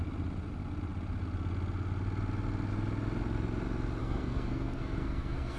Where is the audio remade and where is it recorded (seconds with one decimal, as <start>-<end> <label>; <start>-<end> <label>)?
0.0-4.0 recorded; 4.0-5.6 remade